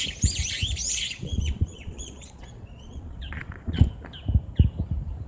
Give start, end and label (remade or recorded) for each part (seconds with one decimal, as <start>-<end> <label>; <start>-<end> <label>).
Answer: 0.0-0.8 recorded; 0.8-3.9 remade; 3.9-5.3 recorded